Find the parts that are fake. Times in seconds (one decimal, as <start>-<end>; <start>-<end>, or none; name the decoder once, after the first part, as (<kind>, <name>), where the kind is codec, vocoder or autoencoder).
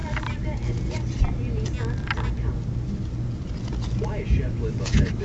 0.0-1.0 (vocoder, BigVGAN v2)